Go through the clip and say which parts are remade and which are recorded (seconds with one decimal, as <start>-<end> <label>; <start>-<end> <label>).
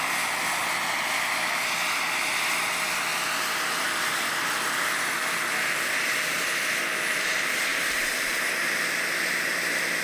0.0-3.1 recorded; 3.1-6.9 remade; 6.9-7.7 recorded; 7.7-8.4 remade; 8.4-10.0 recorded